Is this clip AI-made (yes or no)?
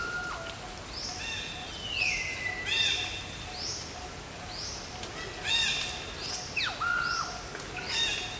no